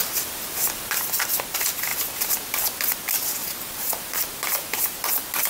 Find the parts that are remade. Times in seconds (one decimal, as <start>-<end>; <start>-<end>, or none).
3.4-4.2